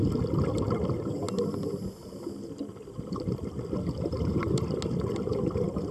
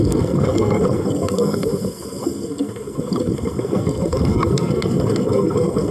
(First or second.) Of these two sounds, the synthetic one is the second